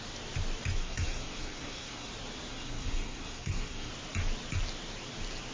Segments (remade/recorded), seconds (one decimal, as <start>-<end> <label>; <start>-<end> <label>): 0.0-0.8 recorded; 0.8-2.1 remade; 2.1-2.5 recorded; 2.5-3.9 remade; 3.9-5.5 recorded